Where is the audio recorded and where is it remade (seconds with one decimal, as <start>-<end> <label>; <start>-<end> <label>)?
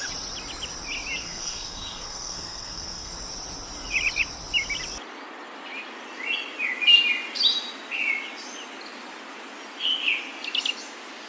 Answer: 0.0-1.2 recorded; 1.2-3.1 remade; 3.1-11.3 recorded